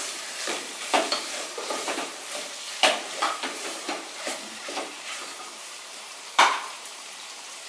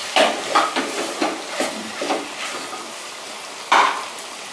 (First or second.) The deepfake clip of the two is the first